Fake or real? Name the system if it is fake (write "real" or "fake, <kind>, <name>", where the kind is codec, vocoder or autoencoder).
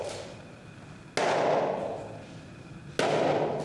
real